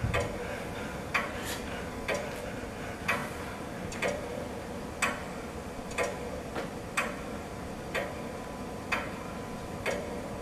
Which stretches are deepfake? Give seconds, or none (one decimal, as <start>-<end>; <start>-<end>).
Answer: 1.1-1.8; 3.2-3.7; 5.2-10.4